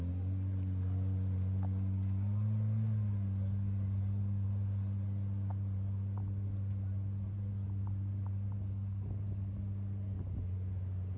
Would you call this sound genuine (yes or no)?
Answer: yes